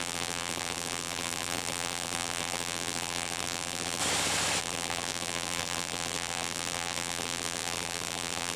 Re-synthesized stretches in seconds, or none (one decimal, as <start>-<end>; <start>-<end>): 0.0-4.0; 4.6-8.6